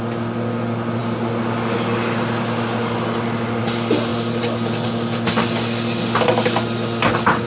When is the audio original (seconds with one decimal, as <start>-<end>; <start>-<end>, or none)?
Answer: 0.0-7.5